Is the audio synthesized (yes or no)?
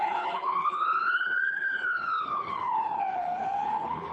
yes